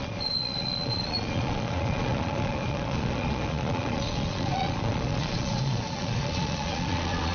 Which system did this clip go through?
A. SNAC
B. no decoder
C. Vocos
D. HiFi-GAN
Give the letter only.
C